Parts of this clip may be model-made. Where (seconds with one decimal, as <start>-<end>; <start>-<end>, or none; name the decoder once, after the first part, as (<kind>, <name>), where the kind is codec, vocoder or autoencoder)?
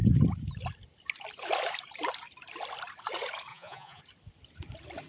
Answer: 3.5-4.0 (vocoder, Vocos)